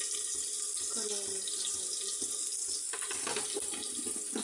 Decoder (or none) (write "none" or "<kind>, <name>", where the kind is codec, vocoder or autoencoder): none